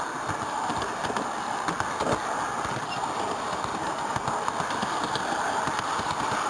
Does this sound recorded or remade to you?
recorded